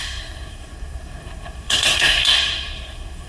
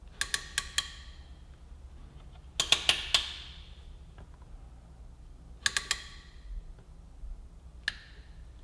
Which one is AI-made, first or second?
first